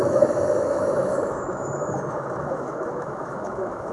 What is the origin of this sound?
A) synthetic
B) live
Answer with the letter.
A